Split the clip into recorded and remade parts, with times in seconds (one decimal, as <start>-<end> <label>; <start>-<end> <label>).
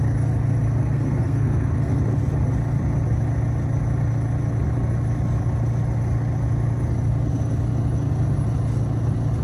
0.0-0.8 recorded; 0.8-2.0 remade; 2.0-9.4 recorded